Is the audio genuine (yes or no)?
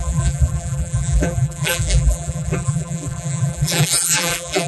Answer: no